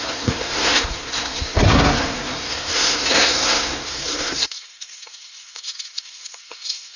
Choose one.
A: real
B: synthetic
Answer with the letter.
B